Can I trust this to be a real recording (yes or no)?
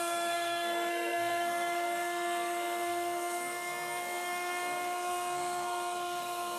no